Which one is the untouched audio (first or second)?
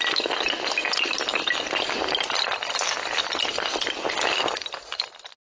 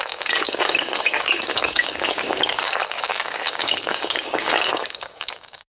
first